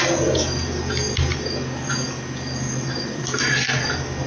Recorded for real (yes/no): yes